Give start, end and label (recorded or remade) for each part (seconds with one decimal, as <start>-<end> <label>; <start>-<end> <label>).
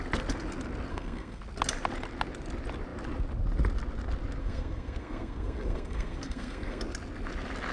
0.0-0.9 recorded; 0.9-1.4 remade; 1.4-4.4 recorded; 4.4-6.8 remade; 6.8-7.7 recorded